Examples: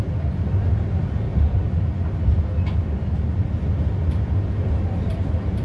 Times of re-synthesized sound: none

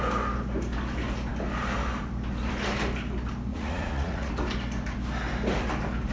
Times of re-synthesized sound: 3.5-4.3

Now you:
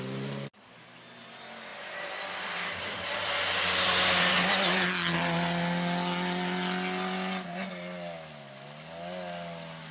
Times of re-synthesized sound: 1.7-4.3